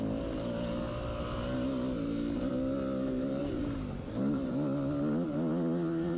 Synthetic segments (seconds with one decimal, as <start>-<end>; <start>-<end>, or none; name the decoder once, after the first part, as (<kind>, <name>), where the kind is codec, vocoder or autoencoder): none